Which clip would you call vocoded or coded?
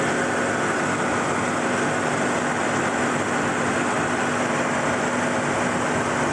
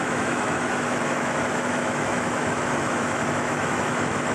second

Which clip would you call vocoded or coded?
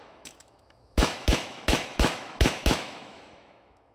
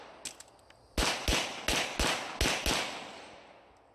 first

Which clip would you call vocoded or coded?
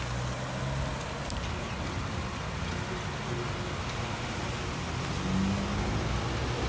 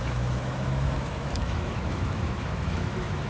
second